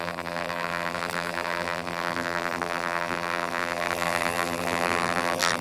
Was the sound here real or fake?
fake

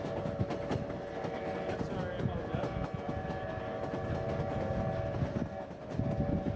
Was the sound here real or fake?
real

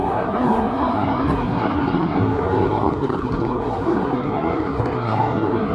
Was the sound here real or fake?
fake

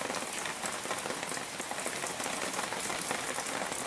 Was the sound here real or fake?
real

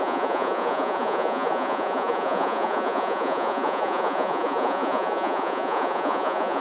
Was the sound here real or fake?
fake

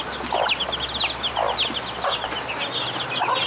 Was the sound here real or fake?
real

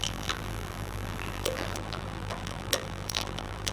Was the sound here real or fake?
fake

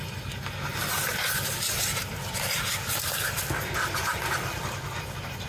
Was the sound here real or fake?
real